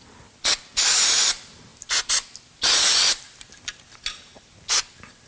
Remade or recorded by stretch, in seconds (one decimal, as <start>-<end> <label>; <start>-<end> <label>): 0.0-5.3 recorded